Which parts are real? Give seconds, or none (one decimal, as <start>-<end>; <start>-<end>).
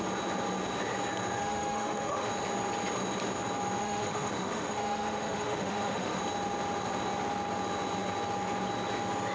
0.0-1.4; 2.3-3.8; 6.2-9.3